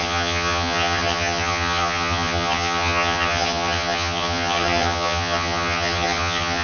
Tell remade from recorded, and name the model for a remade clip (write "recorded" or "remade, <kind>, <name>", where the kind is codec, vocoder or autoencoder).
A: remade, vocoder, HiFi-GAN